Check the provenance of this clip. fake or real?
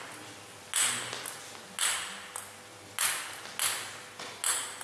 real